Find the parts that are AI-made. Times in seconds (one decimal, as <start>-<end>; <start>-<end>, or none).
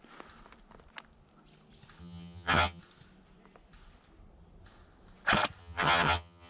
2.0-2.8; 5.6-6.5